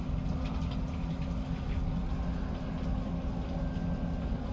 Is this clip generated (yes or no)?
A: no